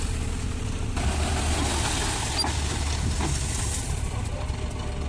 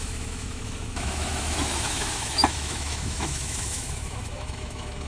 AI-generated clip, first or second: second